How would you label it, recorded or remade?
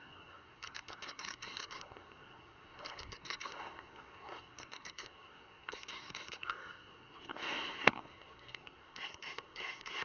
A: remade